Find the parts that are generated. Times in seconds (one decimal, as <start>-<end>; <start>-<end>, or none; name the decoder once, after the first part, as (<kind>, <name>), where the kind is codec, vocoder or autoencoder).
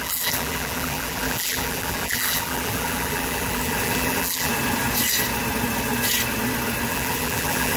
0.0-4.5 (vocoder, BigVGAN v2); 6.9-7.8